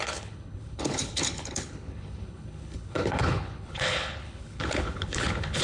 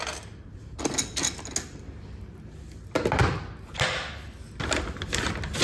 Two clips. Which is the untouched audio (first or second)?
second